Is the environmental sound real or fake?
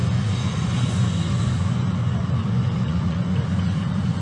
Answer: fake